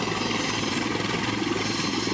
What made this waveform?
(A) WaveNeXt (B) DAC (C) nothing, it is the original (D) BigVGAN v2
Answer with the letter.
D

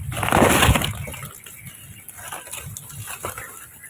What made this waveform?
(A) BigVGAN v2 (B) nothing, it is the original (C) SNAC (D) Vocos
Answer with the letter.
B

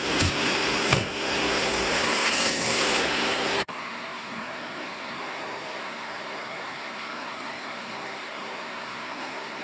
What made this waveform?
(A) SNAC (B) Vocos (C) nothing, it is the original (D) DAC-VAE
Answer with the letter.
A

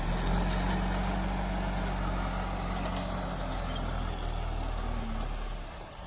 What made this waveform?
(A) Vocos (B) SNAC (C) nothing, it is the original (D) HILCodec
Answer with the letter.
C